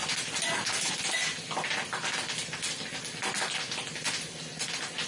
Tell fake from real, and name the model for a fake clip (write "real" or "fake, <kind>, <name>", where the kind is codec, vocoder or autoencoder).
real